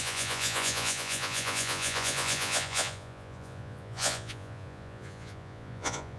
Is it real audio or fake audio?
fake